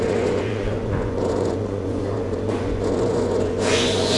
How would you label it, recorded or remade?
remade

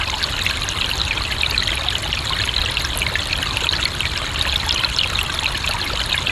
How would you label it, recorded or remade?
recorded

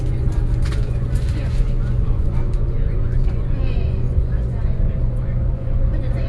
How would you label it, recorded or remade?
remade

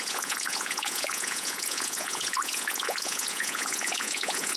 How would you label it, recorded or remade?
remade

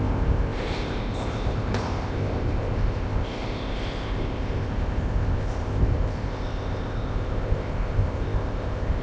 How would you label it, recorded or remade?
remade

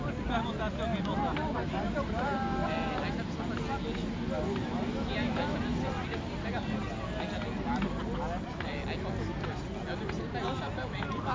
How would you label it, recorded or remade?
recorded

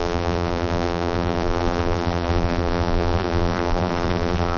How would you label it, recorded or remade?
remade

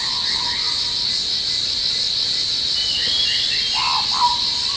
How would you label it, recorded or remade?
recorded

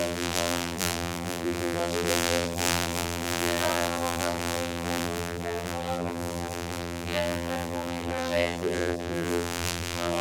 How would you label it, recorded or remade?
remade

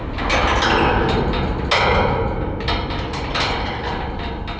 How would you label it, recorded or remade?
recorded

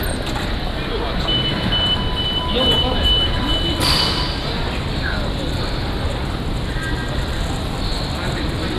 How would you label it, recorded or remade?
recorded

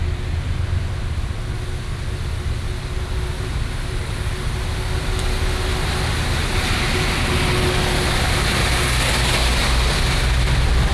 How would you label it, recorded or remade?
recorded